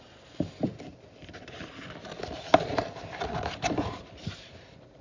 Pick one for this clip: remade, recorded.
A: remade